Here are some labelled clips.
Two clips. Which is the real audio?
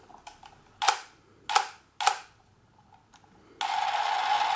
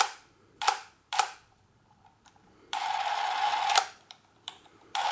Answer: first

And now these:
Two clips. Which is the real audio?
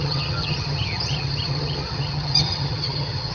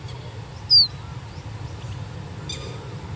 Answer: second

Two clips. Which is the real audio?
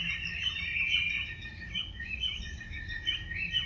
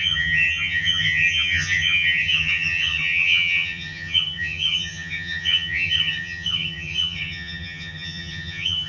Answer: first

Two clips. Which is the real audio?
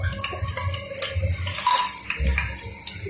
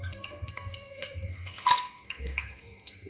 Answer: first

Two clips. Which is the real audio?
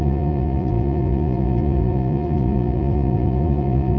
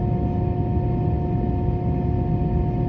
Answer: second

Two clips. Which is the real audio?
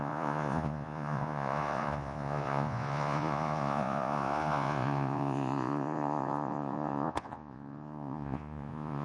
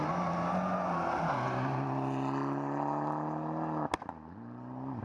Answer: second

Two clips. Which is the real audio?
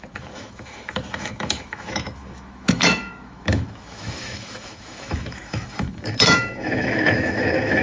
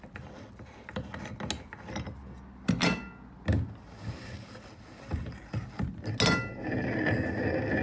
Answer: second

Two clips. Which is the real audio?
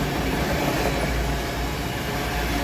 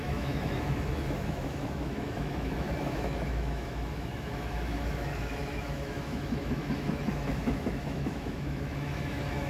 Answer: first